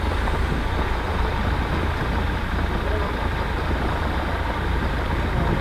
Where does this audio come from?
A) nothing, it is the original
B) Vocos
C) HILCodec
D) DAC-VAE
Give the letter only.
A